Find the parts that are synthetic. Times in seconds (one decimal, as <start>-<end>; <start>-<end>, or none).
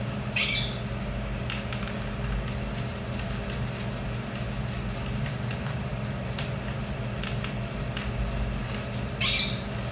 none